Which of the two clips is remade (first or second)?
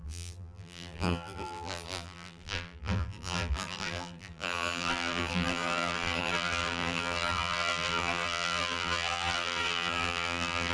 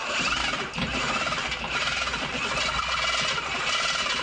first